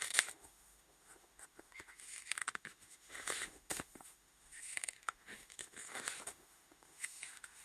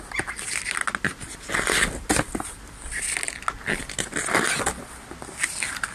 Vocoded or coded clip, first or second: first